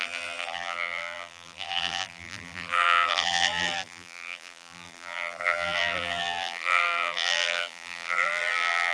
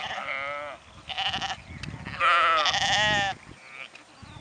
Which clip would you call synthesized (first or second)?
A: first